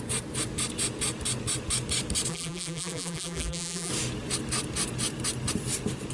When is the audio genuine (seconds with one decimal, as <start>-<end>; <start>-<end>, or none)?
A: 0.0-2.3; 3.9-6.1